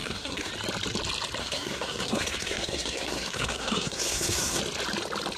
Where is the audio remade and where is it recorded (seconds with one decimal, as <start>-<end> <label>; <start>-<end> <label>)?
0.0-0.5 remade; 0.5-1.4 recorded; 1.4-4.6 remade; 4.6-5.4 recorded